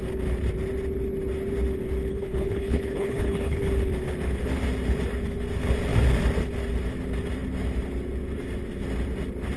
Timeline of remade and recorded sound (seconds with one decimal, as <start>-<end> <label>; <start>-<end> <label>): 0.0-2.1 recorded; 2.1-3.6 remade; 3.6-9.6 recorded

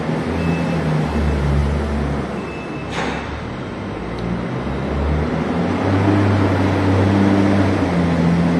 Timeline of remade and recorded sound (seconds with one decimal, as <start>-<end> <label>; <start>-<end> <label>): 0.0-8.6 recorded

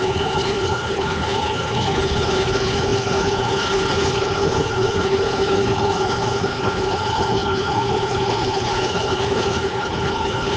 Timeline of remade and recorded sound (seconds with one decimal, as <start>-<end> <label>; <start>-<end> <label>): 0.0-10.6 remade

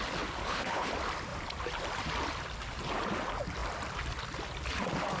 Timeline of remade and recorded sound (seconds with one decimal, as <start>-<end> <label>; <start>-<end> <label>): 0.0-0.4 recorded; 0.4-0.9 remade; 0.9-5.2 recorded

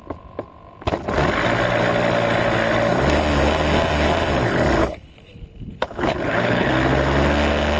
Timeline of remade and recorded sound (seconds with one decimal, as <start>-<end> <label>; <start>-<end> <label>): 0.0-4.8 recorded; 4.8-6.7 remade; 6.7-7.8 recorded

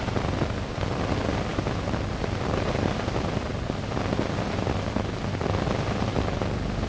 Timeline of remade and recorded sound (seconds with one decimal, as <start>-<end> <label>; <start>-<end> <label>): 0.0-6.9 recorded

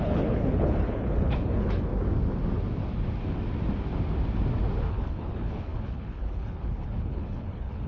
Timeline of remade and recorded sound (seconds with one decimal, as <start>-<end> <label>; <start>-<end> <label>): 0.0-1.9 remade; 1.9-4.9 recorded; 4.9-7.9 remade